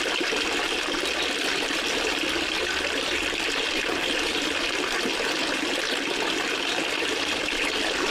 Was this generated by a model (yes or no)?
no